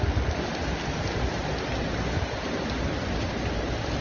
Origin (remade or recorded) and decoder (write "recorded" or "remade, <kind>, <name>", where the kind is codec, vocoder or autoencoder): remade, vocoder, BigVGAN v2